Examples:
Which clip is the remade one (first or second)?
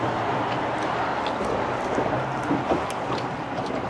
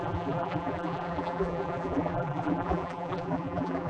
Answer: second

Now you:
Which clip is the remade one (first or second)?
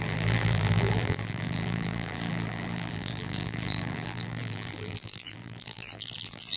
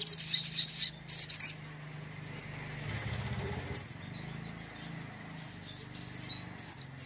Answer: first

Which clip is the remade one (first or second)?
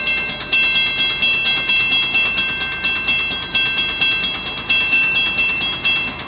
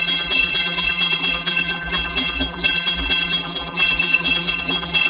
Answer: second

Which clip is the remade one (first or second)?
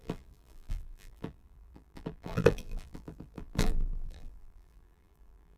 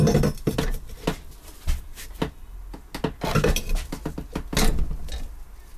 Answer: first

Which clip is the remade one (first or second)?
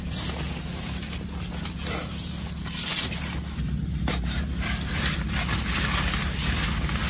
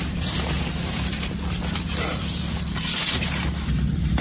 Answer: second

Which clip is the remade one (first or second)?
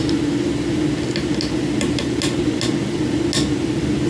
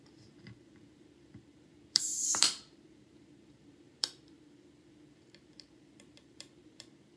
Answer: second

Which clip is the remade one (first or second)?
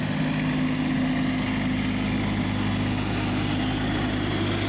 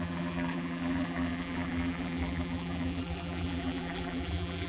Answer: second